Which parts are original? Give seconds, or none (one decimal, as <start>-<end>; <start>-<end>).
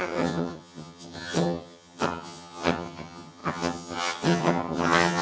none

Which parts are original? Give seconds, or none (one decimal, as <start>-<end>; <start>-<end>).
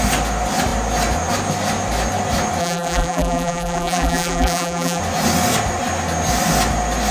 0.0-2.6; 5.0-7.1